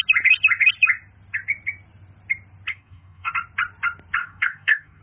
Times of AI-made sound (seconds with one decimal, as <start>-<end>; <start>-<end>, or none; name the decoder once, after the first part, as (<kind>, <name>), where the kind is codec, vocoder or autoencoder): 2.7-3.3 (codec, DAC); 4.2-5.0